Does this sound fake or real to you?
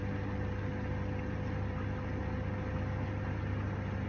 real